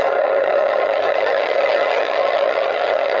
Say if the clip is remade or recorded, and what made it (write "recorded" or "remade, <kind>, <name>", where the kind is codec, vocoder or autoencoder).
remade, vocoder, HiFi-GAN